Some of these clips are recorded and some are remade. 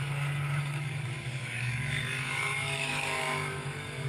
remade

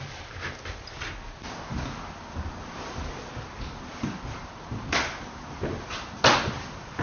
recorded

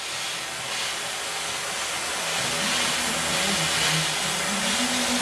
recorded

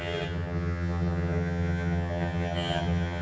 remade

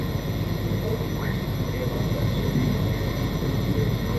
recorded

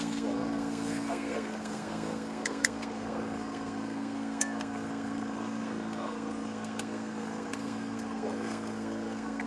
remade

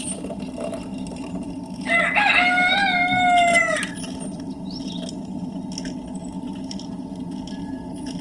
recorded